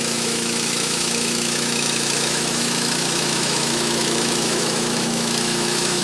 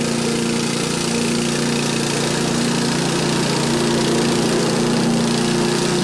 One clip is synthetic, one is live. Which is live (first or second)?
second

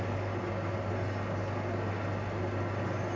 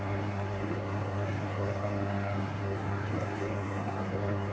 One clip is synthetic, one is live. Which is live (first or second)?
first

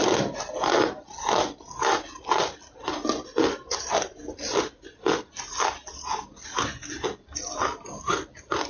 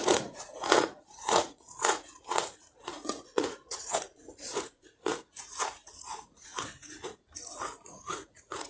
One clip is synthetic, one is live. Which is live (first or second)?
first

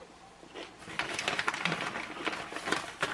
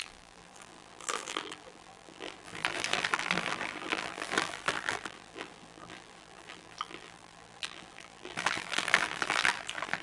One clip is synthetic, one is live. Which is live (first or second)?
first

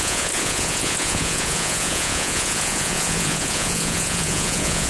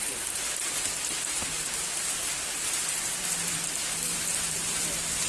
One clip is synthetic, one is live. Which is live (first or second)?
second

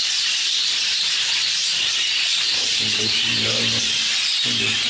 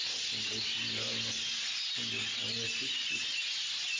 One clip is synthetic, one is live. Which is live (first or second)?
second